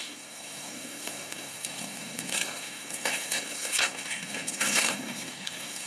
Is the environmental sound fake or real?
fake